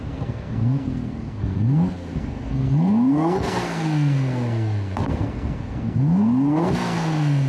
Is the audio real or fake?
fake